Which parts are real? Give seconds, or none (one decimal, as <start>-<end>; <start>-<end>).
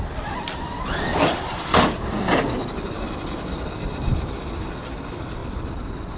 none